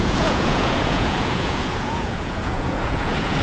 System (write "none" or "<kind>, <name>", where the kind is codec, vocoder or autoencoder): vocoder, Vocos